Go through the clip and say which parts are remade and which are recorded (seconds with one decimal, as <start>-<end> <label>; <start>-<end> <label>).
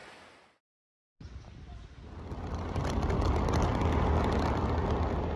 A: 0.0-5.4 recorded